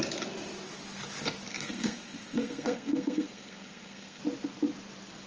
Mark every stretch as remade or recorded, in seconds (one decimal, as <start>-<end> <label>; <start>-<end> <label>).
0.0-1.5 recorded; 1.5-4.2 remade; 4.2-5.3 recorded